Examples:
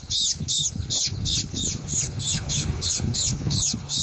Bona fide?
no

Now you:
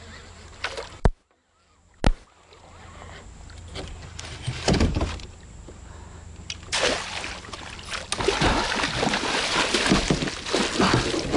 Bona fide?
yes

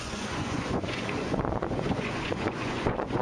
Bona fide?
no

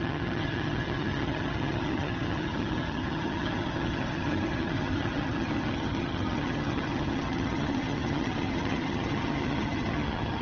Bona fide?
no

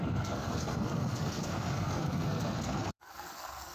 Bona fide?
no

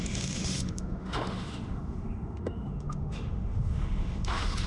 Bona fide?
no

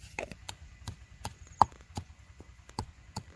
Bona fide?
no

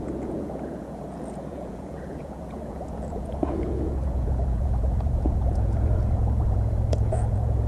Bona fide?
no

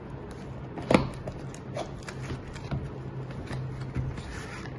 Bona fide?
yes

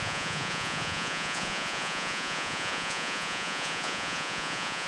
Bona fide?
no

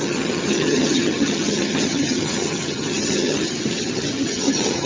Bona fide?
no